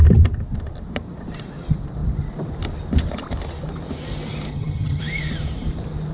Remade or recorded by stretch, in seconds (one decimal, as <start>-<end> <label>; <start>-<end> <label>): 0.0-4.5 recorded; 4.5-5.0 remade; 5.0-6.1 recorded